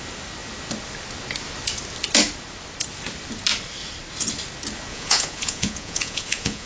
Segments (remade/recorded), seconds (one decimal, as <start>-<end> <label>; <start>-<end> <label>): 0.0-4.9 recorded; 4.9-6.7 remade